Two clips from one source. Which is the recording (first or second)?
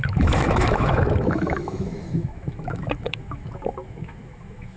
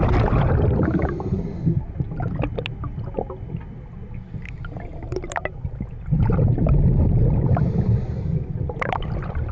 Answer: second